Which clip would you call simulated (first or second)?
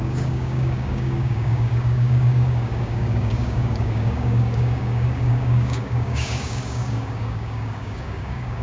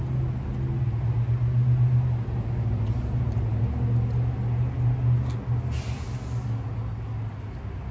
first